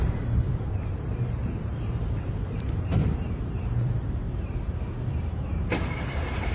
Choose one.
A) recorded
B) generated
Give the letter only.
B